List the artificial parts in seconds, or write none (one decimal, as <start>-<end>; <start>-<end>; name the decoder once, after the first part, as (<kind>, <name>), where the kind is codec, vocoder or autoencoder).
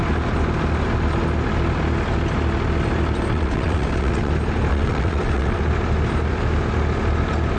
3.3-4.3 (vocoder, WaveNeXt); 4.7-5.6